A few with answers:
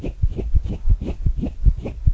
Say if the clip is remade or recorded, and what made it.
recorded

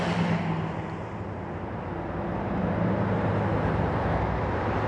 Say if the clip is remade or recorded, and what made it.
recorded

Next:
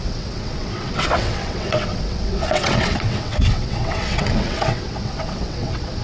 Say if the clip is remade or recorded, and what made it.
remade, vocoder, WaveNeXt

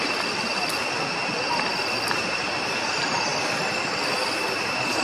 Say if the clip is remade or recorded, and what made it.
remade, vocoder, BigVGAN v2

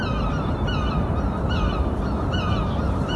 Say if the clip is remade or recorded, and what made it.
recorded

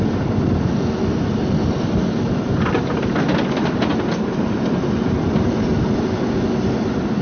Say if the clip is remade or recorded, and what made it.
recorded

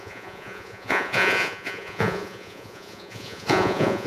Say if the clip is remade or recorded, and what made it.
remade, vocoder, Vocos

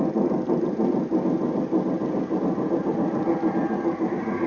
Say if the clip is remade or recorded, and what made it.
recorded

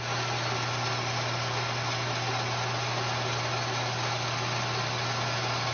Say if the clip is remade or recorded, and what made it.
recorded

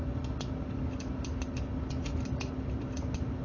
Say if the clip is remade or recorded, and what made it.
recorded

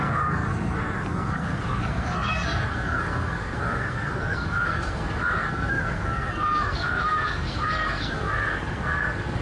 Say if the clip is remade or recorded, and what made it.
remade, codec, SNAC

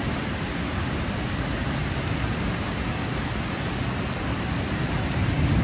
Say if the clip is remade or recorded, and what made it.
recorded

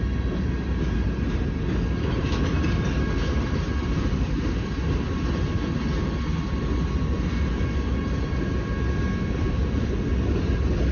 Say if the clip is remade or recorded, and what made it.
recorded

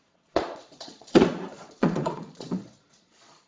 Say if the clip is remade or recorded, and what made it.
remade, vocoder, Vocos